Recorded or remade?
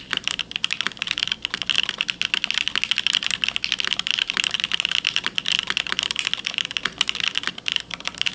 recorded